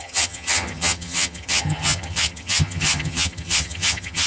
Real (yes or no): no